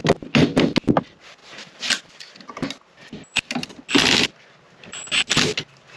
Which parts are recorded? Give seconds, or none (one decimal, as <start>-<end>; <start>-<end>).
0.0-1.4; 2.1-6.0